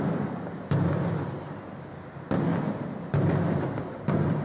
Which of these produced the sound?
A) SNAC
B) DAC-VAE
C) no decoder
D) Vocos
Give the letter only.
C